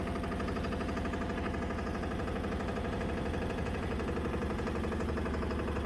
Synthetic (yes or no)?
no